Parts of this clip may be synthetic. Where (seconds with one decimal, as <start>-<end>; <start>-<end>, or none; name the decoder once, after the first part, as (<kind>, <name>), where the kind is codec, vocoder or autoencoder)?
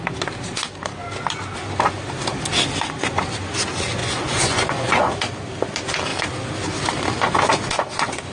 4.0-5.1 (vocoder, Vocos)